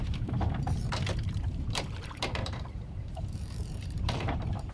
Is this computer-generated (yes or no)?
yes